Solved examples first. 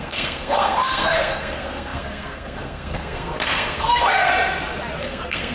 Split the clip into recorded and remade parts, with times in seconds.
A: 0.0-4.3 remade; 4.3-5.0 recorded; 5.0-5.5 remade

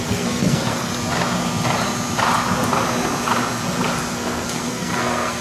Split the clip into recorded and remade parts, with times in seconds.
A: 0.0-0.9 remade; 0.9-4.1 recorded; 4.1-5.4 remade